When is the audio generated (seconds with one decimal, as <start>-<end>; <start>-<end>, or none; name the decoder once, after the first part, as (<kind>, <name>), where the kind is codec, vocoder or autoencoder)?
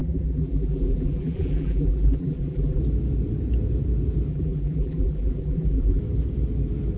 0.0-2.8 (vocoder, BigVGAN v2); 4.3-6.0